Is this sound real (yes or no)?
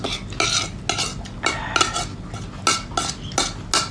yes